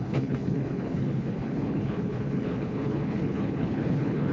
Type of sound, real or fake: fake